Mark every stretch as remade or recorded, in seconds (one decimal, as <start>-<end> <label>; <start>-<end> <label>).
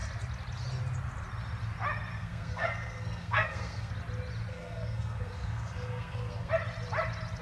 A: 0.0-2.1 recorded; 2.1-3.9 remade; 3.9-4.5 recorded; 4.5-6.5 remade; 6.5-7.4 recorded